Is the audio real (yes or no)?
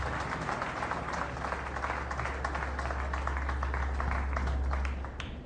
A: yes